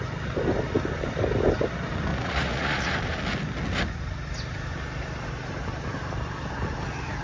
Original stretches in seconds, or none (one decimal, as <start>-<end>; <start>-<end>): 0.0-2.1; 2.9-7.2